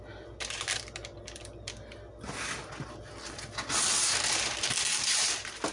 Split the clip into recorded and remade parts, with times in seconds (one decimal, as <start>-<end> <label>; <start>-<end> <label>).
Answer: 0.0-4.9 recorded; 4.9-5.7 remade